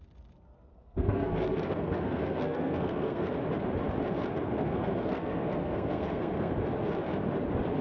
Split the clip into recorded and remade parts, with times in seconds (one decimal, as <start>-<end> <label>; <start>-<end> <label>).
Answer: 0.0-0.7 recorded; 0.7-3.3 remade; 3.3-4.3 recorded; 4.3-6.5 remade; 6.5-7.8 recorded